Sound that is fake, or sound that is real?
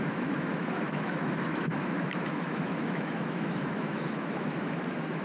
fake